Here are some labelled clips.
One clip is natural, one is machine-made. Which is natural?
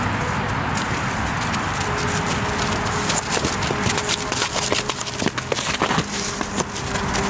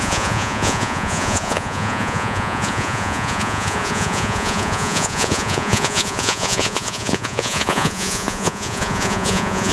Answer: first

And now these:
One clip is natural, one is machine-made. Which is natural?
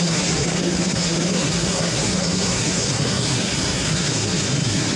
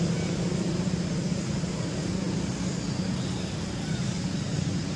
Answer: second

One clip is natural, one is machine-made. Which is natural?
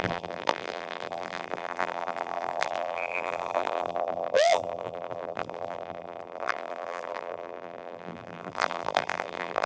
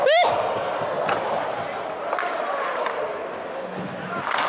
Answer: second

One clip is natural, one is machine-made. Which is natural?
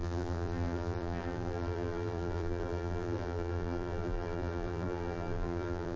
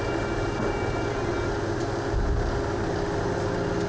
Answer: second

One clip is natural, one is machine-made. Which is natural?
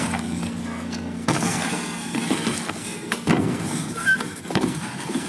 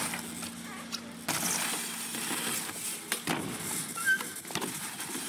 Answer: second